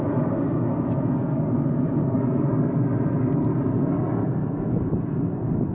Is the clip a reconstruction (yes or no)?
no